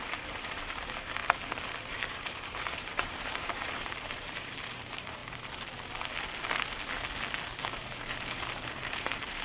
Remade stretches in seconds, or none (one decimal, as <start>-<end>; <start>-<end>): 0.0-1.2; 1.9-5.2; 7.6-9.4